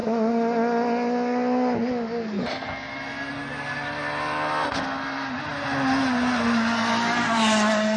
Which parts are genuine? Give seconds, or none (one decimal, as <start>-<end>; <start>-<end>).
0.0-3.4; 4.0-8.0